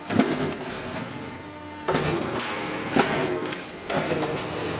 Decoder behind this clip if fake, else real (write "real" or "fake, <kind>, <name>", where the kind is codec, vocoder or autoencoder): fake, codec, SNAC